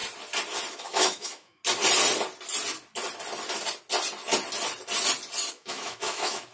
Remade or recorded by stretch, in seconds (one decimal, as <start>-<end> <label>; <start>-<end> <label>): 0.0-0.7 recorded; 0.7-1.6 remade; 1.6-5.5 recorded; 5.5-6.5 remade